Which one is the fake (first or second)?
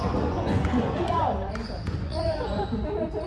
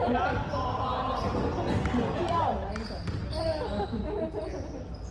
first